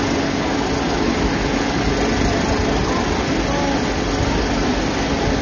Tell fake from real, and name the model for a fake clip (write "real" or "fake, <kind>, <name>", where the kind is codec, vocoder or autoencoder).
real